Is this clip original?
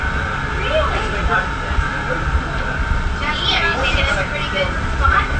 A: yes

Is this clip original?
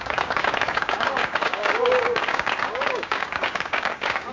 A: no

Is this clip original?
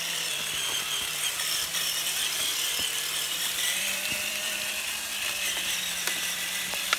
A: no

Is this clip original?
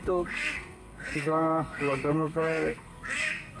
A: no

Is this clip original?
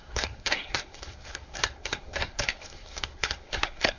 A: no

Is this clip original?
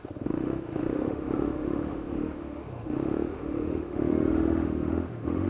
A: no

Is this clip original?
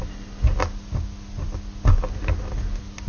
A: yes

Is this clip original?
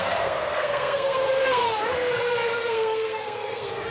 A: no